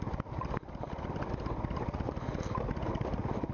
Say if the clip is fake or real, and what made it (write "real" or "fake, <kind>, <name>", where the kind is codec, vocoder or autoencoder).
real